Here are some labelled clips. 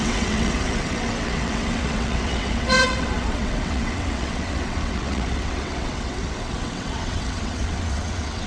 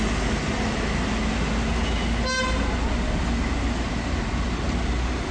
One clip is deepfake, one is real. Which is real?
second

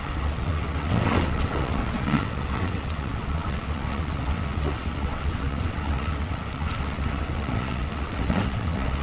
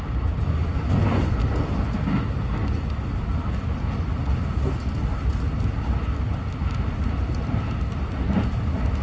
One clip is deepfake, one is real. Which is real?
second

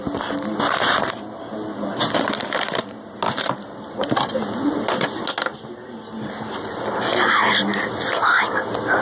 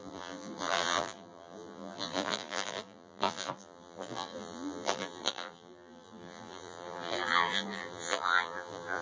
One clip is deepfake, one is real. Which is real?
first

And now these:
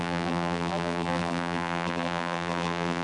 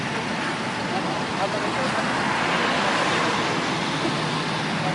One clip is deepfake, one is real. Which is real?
second